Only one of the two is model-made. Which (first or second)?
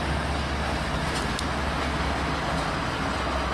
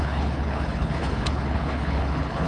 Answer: second